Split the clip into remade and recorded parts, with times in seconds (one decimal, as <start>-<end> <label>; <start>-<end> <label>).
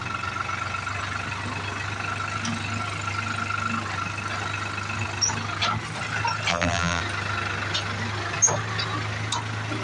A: 0.0-6.5 recorded; 6.5-7.0 remade; 7.0-9.8 recorded